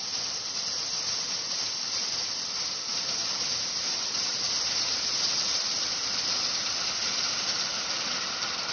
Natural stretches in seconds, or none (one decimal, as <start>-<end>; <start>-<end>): 0.0-8.7